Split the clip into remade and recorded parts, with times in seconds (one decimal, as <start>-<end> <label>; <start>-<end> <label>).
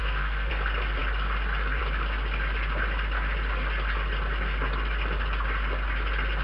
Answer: 0.0-0.5 remade; 0.5-6.4 recorded